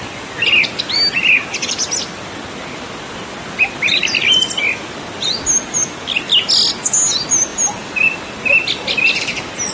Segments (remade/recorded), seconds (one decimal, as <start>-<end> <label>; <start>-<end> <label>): 0.0-9.7 recorded